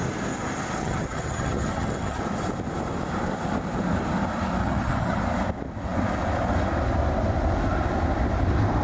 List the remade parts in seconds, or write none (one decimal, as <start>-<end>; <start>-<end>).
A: 0.8-2.2; 4.6-5.2